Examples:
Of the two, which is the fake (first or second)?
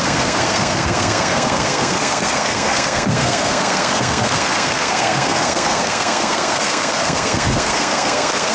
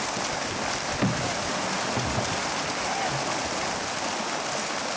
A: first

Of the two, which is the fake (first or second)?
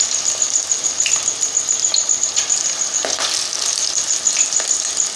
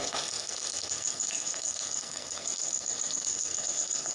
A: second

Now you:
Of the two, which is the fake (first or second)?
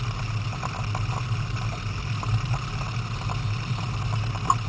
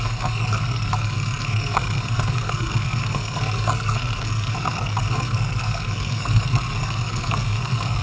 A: second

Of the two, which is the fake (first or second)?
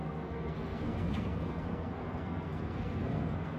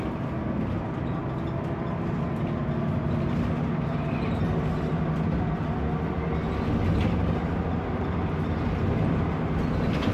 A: first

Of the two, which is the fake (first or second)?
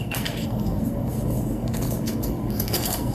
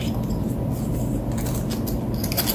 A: first